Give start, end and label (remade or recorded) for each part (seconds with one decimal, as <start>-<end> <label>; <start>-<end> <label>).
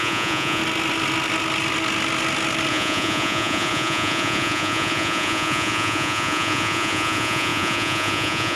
0.0-0.6 remade; 0.6-2.7 recorded; 2.7-8.6 remade